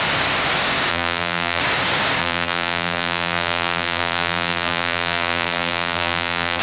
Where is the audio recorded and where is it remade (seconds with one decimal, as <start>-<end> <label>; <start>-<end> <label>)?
0.0-0.9 recorded; 0.9-1.6 remade; 1.6-2.2 recorded; 2.2-6.6 remade